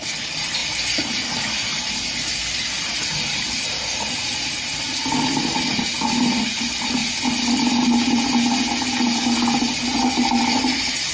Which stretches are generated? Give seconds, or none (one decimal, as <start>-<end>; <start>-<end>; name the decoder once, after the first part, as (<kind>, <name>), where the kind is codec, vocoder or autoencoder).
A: none